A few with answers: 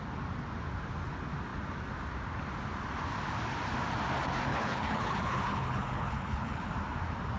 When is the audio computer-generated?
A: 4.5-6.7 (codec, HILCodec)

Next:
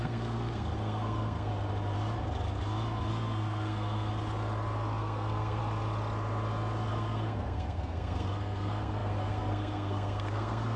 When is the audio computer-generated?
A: 0.0-1.5 (codec, SNAC); 3.1-4.1; 5.0-5.6; 6.9-10.8

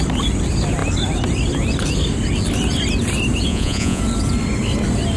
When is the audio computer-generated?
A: 3.5-4.0 (vocoder, Vocos)

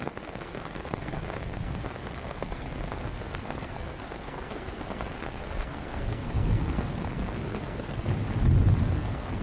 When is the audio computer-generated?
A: 0.0-8.1 (codec, SNAC); 8.8-9.4

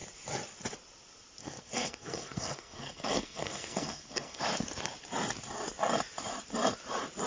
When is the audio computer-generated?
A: 1.4-4.4 (codec, SNAC)